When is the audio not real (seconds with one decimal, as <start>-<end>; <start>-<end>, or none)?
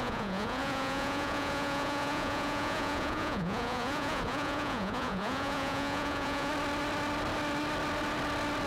0.0-6.5